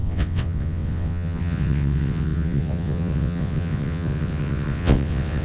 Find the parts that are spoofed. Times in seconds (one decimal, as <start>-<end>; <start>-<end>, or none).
0.0-5.4